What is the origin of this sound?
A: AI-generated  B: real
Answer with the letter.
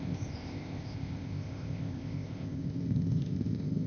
A